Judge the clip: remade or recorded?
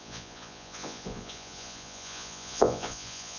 remade